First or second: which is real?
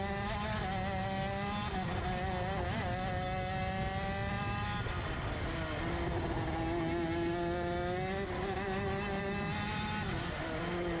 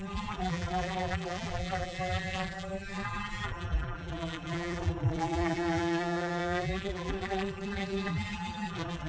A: first